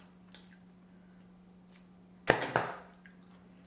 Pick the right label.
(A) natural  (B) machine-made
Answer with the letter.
A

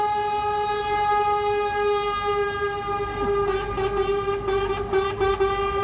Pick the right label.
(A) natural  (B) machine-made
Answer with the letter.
A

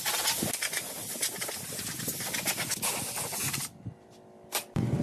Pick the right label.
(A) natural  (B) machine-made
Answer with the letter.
A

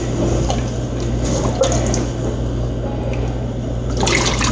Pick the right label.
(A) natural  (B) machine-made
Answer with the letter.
A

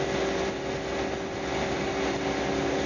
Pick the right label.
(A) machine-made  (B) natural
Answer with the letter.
B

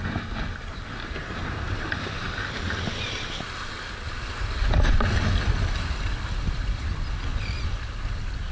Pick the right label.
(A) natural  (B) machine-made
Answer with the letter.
A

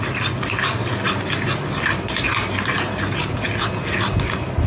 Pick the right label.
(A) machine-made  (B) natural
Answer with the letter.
B